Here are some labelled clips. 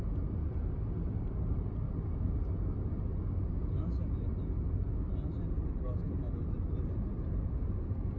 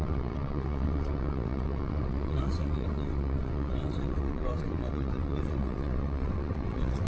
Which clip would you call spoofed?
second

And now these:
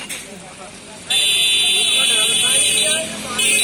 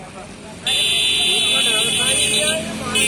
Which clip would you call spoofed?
first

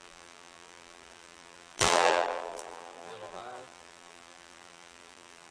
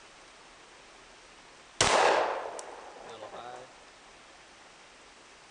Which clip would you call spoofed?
first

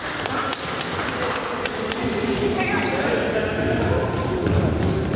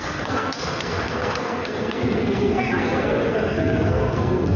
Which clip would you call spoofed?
second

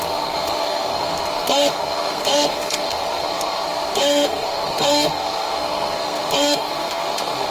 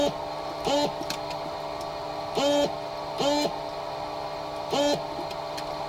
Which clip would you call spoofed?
first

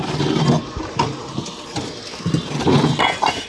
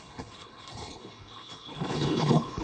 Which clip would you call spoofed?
second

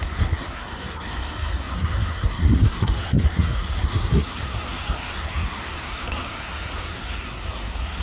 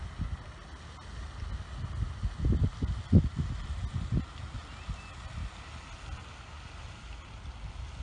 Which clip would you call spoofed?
first